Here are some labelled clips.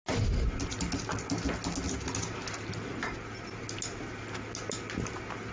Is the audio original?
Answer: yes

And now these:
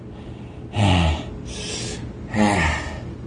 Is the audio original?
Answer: yes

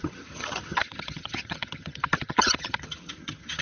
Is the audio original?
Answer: no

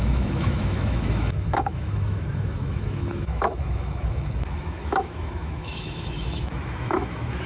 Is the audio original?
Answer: no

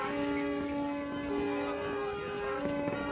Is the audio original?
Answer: yes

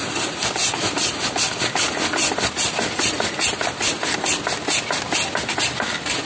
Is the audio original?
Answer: yes